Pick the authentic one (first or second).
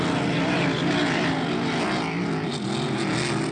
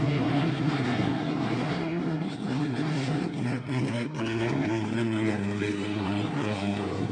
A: first